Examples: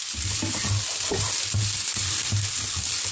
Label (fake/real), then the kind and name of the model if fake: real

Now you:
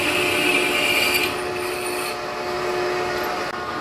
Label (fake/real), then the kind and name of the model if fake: real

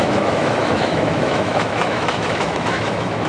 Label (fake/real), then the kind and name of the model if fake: fake, autoencoder, DAC-VAE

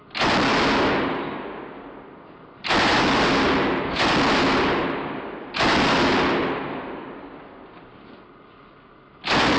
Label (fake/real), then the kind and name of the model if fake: real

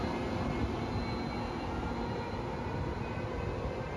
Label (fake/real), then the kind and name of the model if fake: real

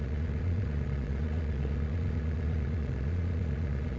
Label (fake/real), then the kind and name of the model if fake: fake, vocoder, Vocos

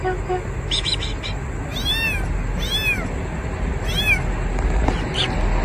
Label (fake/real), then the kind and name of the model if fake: real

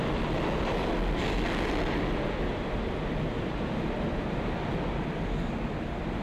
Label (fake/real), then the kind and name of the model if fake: real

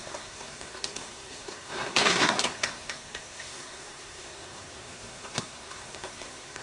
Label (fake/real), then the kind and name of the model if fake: fake, codec, SNAC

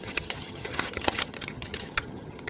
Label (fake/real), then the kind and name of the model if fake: fake, vocoder, HiFi-GAN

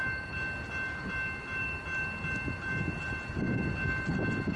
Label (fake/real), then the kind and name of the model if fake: real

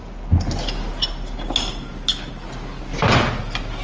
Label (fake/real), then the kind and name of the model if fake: real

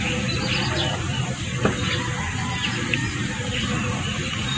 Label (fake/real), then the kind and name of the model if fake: fake, vocoder, BigVGAN v2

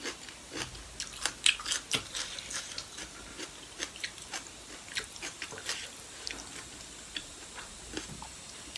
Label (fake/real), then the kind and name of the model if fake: real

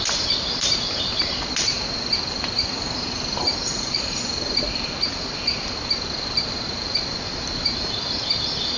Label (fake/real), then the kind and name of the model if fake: fake, vocoder, BigVGAN v2